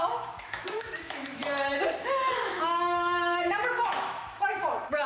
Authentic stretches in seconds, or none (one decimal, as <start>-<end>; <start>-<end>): 1.4-2.1